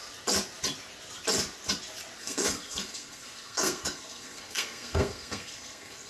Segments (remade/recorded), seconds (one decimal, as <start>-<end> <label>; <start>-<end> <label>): 0.0-2.2 recorded; 2.2-6.1 remade